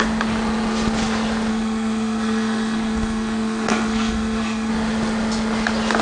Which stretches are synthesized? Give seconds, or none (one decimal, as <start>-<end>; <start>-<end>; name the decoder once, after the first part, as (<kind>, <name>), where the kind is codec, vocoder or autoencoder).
1.5-4.7 (codec, SNAC)